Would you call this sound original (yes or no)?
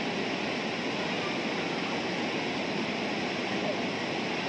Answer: yes